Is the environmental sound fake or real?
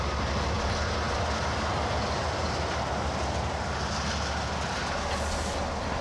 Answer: real